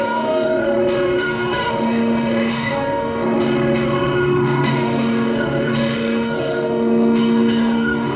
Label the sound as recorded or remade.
remade